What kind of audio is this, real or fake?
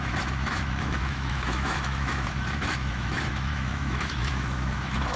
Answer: fake